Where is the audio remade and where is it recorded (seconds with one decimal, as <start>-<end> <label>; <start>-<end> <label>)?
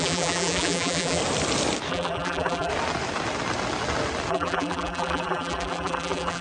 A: 0.0-1.2 remade; 1.2-1.9 recorded; 1.9-2.7 remade; 2.7-4.3 recorded; 4.3-6.4 remade